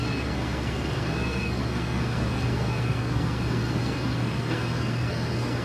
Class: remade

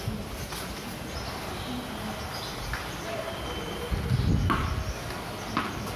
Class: recorded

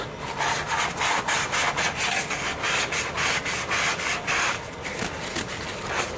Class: recorded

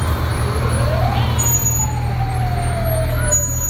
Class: recorded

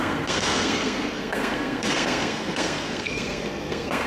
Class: remade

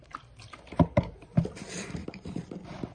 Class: recorded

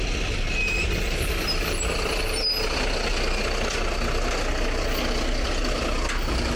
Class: recorded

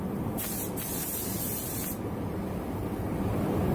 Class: recorded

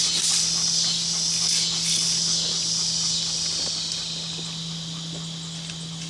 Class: recorded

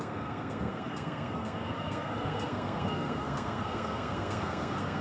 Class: remade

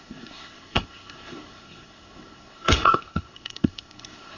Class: remade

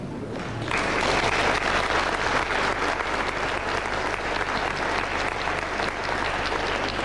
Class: recorded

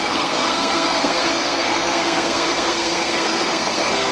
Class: remade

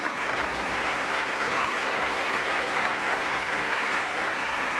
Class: remade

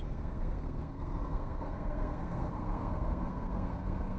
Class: remade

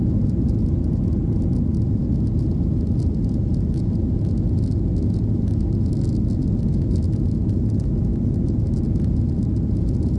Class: recorded